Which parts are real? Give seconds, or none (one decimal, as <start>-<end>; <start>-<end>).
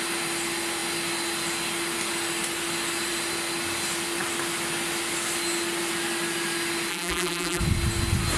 0.0-6.9; 7.6-8.4